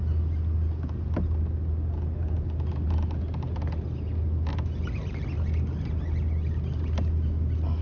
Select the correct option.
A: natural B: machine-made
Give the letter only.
A